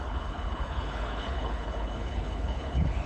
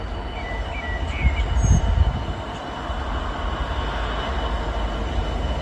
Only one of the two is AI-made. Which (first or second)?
first